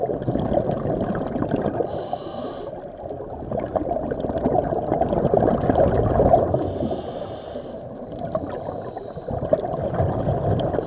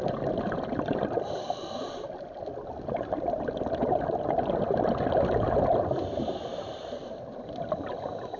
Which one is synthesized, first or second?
second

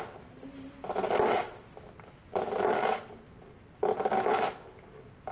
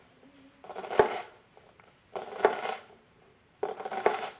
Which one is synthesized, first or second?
second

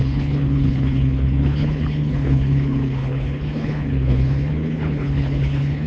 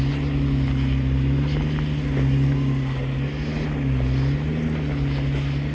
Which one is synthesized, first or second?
first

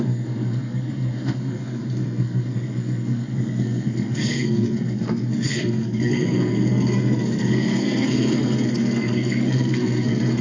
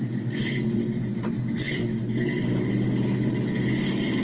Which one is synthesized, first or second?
first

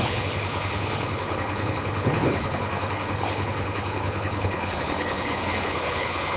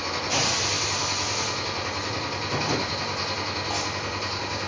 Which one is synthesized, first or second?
first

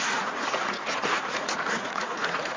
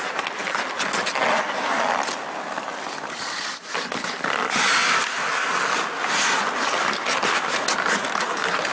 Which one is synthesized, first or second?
first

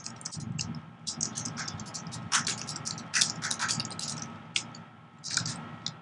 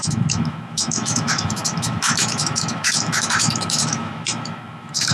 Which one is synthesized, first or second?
second